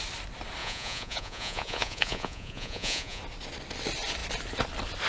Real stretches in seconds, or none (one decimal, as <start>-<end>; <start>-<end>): 0.0-0.6; 3.2-5.1